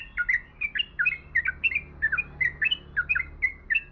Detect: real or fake real